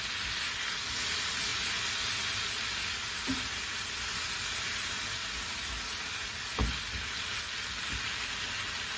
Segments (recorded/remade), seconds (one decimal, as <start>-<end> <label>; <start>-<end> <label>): 0.0-9.0 recorded